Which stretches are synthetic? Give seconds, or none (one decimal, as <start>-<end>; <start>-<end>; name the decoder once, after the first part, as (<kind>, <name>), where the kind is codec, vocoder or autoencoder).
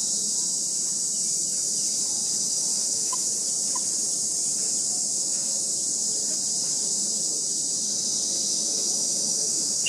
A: 2.7-3.3 (autoencoder, DAC-VAE); 5.1-5.6; 8.5-9.9